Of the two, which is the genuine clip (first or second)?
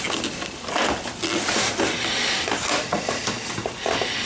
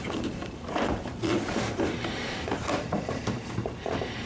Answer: first